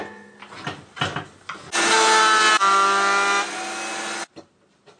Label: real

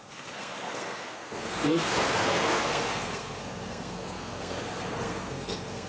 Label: fake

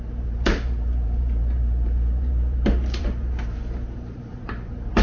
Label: fake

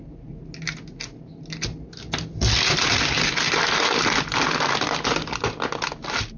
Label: real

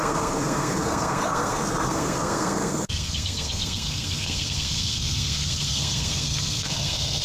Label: fake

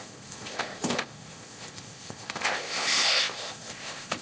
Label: fake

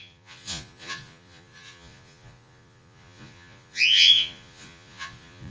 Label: fake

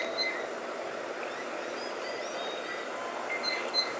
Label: real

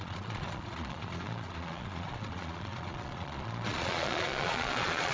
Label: fake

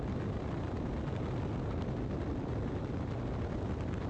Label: real